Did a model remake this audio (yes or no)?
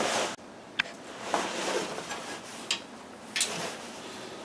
no